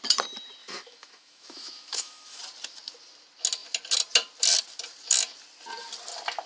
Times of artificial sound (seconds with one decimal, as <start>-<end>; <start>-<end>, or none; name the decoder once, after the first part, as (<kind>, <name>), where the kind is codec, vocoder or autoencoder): 0.6-2.4 (autoencoder, DAC-VAE)